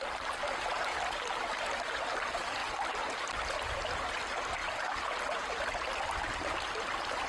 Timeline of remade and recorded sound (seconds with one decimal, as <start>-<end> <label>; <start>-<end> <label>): 0.0-7.3 recorded